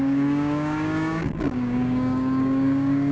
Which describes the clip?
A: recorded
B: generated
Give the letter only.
B